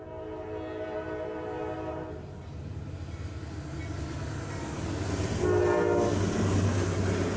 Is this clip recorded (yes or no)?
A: yes